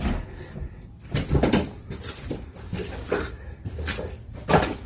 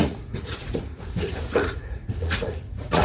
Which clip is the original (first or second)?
first